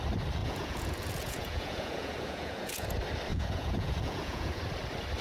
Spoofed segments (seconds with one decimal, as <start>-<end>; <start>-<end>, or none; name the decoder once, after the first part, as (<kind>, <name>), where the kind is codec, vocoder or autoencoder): 0.4-2.9 (vocoder, Vocos); 3.3-4.6